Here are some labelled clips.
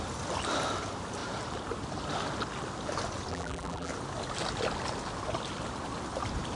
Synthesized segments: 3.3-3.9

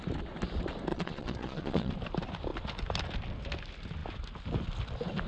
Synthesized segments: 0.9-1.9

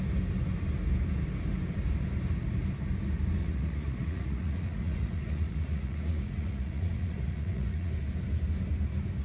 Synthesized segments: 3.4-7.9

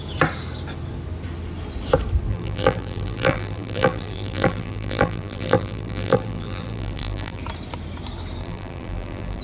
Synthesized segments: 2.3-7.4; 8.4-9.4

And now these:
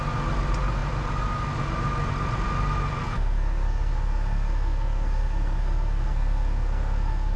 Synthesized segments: 3.0-7.4

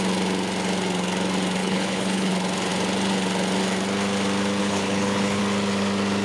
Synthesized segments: 1.6-2.3; 4.6-5.4

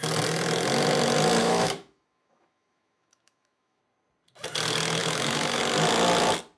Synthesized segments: 1.4-3.8; 5.0-5.6